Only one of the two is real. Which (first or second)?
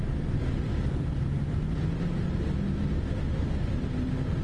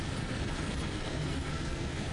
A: first